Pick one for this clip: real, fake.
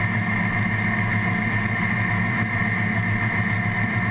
real